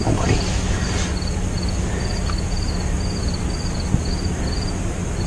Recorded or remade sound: recorded